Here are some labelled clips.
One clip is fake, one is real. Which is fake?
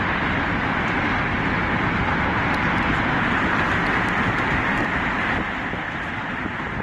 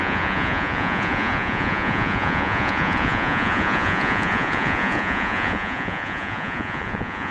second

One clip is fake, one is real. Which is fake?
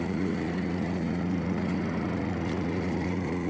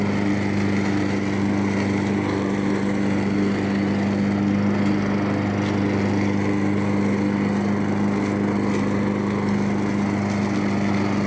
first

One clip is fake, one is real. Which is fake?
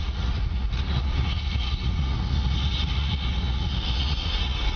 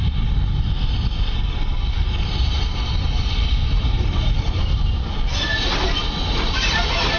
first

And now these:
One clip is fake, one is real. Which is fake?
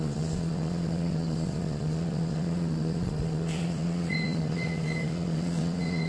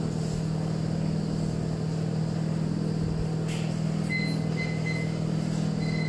first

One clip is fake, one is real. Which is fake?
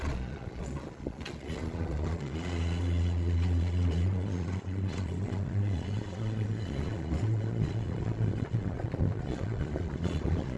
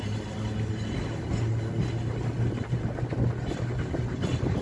first